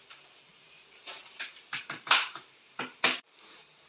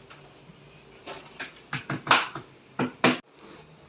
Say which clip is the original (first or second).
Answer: second